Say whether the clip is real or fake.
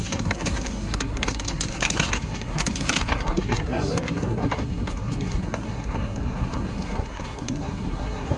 fake